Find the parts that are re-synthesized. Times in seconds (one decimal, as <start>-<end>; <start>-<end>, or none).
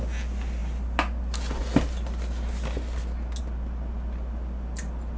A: none